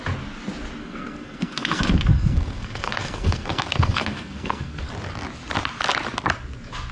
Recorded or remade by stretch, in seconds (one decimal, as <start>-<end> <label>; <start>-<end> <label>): 0.0-0.8 recorded; 0.8-4.9 remade; 4.9-6.9 recorded